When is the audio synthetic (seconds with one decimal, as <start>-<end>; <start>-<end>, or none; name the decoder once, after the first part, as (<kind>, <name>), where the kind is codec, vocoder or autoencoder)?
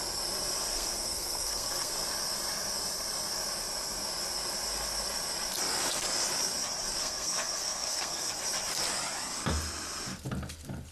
0.7-1.9 (codec, SNAC); 7.0-8.3